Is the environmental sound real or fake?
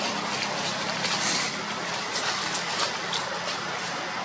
real